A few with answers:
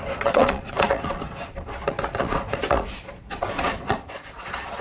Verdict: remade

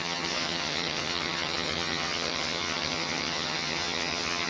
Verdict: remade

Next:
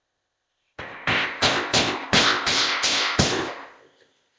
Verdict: remade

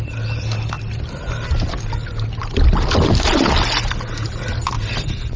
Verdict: recorded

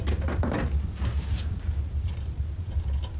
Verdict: recorded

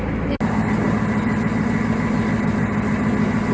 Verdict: recorded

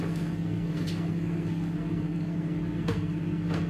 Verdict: remade